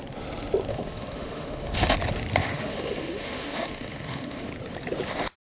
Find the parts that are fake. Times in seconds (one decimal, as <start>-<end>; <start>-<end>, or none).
0.7-1.9; 2.4-4.5